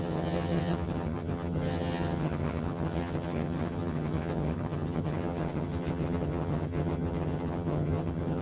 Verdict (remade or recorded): remade